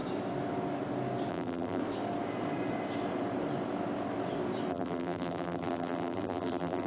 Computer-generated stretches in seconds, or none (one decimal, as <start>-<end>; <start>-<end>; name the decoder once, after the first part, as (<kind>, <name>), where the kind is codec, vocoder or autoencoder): 1.3-1.8 (vocoder, BigVGAN v2); 4.7-6.9

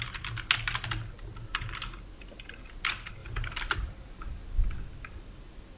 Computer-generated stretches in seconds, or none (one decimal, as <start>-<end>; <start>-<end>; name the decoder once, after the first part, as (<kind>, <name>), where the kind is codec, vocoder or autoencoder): 3.2-3.7 (vocoder, BigVGAN v2)